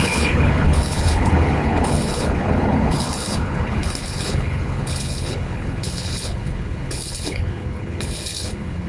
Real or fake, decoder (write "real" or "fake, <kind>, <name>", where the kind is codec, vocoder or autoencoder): fake, codec, HILCodec